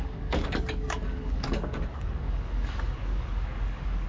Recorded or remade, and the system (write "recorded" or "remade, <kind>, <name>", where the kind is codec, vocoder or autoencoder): remade, codec, DAC